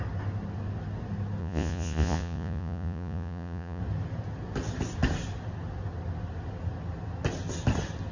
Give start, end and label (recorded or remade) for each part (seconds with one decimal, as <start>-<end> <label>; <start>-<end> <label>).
0.0-1.4 recorded; 1.4-3.8 remade; 3.8-8.1 recorded